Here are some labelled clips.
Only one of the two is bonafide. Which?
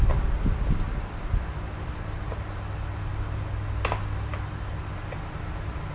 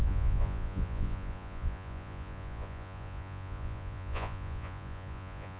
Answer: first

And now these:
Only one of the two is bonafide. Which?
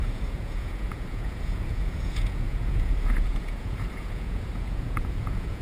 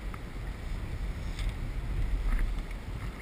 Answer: second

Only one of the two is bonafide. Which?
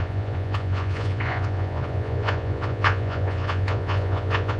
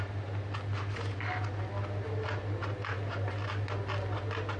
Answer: second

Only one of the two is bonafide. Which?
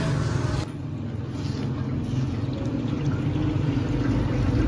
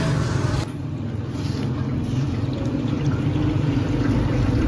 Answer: first